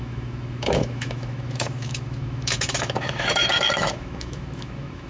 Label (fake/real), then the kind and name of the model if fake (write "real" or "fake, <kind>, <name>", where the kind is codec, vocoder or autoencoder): fake, autoencoder, DAC-VAE